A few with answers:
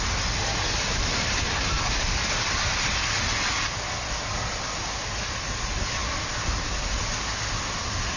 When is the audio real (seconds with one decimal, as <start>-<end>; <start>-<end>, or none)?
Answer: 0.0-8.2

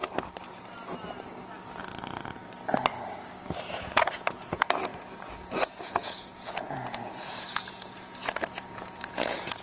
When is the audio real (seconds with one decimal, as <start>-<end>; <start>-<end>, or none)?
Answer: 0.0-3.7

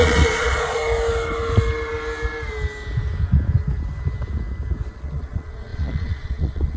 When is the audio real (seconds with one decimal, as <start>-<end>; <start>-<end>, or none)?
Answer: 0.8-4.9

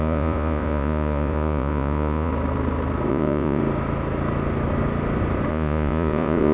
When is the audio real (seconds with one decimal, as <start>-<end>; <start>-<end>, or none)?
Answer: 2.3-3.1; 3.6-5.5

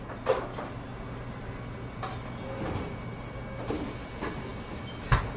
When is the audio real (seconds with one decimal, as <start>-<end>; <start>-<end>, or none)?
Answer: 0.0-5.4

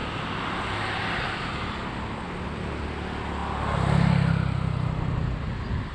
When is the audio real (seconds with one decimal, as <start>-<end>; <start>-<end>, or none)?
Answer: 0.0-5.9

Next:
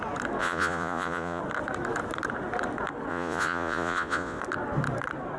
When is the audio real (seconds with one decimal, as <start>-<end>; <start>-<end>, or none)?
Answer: 0.0-0.4; 1.4-3.1; 4.4-5.4